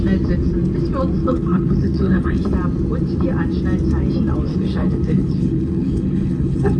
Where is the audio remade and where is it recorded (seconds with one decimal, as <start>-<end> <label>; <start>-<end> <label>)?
0.0-1.2 recorded; 1.2-2.4 remade; 2.4-4.5 recorded; 4.5-6.8 remade